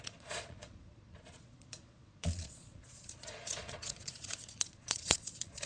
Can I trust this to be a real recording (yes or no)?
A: no